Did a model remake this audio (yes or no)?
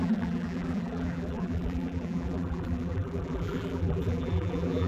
yes